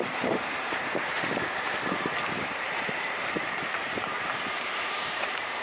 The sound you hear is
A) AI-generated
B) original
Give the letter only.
A